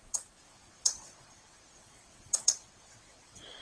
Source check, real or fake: fake